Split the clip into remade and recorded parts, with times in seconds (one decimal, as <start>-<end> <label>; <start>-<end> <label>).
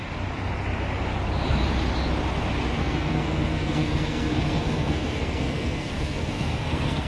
0.0-2.8 recorded; 2.8-7.1 remade